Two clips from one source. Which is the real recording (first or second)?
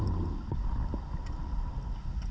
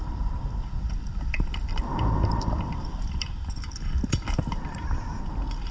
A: first